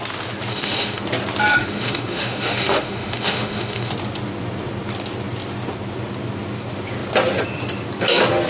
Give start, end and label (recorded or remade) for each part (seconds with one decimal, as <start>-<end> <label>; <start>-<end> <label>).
0.0-0.5 recorded; 0.5-1.0 remade; 1.0-1.5 recorded; 1.5-3.9 remade; 3.9-8.5 recorded